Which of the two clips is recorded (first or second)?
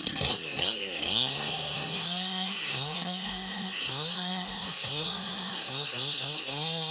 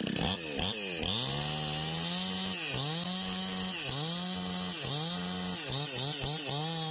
second